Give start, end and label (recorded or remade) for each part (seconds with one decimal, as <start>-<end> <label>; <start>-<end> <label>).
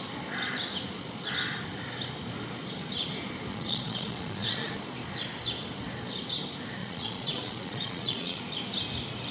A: 0.0-3.5 recorded; 3.5-4.7 remade; 4.7-6.8 recorded; 6.8-8.4 remade; 8.4-9.3 recorded